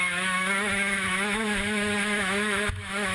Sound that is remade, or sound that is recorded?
remade